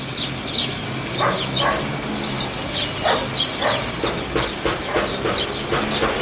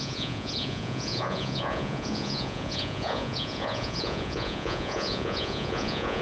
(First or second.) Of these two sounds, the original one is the first